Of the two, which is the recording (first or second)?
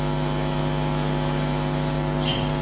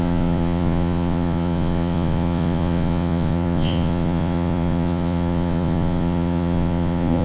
first